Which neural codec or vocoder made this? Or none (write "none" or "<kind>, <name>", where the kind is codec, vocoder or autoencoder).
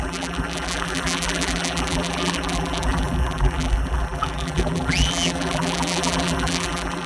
vocoder, BigVGAN v2